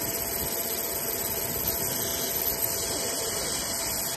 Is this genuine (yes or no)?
yes